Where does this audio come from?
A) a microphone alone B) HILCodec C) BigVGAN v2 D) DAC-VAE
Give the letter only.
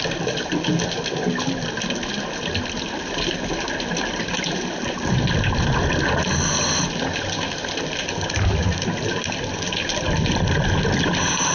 A